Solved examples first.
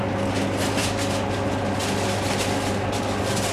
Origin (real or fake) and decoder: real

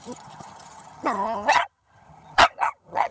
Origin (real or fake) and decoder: fake, vocoder, HiFi-GAN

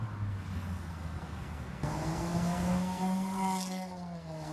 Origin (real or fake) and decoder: fake, codec, SNAC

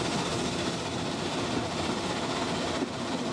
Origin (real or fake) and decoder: real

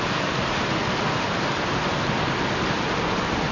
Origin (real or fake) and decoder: real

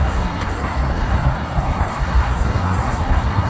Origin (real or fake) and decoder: fake, codec, SNAC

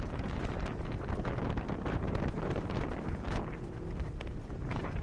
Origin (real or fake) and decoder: fake, vocoder, BigVGAN v2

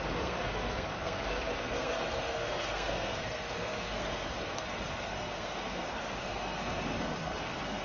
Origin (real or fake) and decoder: fake, codec, SNAC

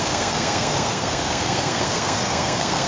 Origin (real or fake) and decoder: fake, codec, SNAC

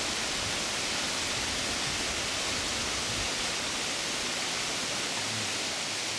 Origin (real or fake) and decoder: real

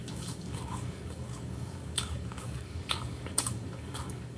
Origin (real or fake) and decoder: fake, codec, DAC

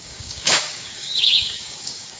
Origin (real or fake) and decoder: fake, codec, DAC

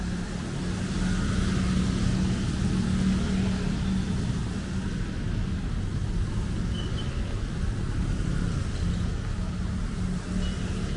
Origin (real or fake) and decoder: real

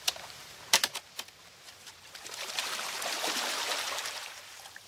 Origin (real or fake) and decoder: fake, vocoder, BigVGAN v2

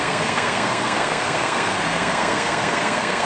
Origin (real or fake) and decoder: fake, codec, SNAC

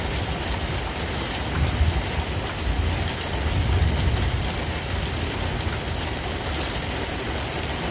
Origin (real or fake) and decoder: real